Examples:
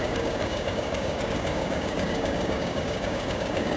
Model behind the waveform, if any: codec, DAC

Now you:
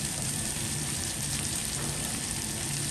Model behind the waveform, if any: vocoder, BigVGAN v2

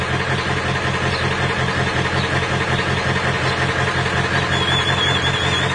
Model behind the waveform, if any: none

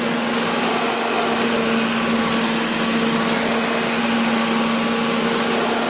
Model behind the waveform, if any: none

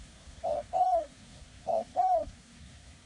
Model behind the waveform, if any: codec, SNAC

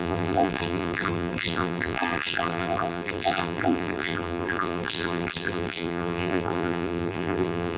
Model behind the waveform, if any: vocoder, BigVGAN v2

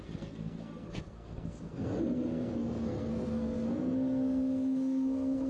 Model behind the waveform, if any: codec, SNAC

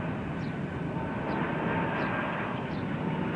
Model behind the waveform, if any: none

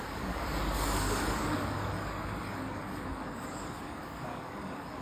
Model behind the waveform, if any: codec, DAC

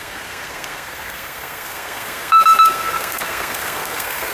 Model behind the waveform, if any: codec, SNAC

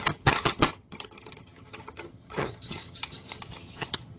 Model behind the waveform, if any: vocoder, HiFi-GAN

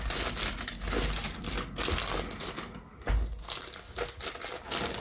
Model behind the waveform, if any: none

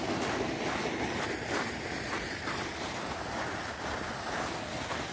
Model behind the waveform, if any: none